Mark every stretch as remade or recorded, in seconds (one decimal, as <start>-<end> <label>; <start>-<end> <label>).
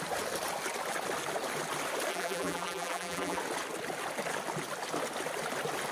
0.0-2.1 recorded; 2.1-3.4 remade; 3.4-5.9 recorded